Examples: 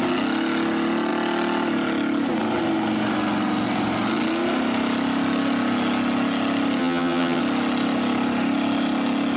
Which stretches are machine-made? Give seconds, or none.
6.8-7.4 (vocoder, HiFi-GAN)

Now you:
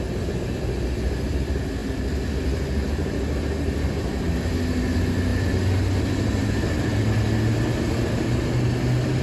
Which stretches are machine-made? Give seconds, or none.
none

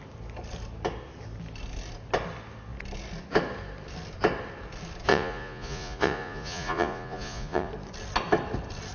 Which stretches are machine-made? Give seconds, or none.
5.1-7.7 (vocoder, Vocos)